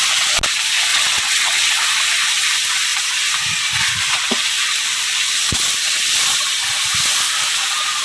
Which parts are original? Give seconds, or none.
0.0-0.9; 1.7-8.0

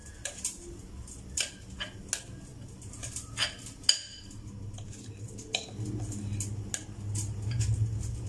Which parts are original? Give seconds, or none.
0.9-8.3

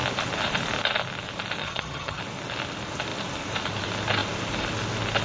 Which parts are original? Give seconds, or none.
0.0-1.6; 2.2-5.2

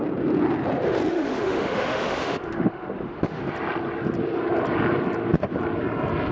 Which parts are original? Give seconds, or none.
0.0-1.1; 3.4-6.3

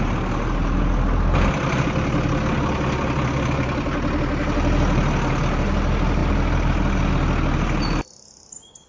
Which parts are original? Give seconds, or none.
0.0-8.9

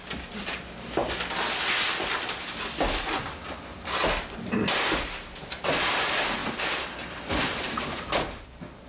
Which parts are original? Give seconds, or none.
0.0-8.9